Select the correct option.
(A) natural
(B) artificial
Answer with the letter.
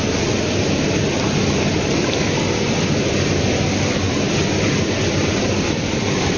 A